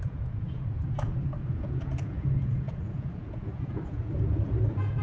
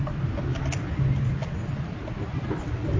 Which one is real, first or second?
second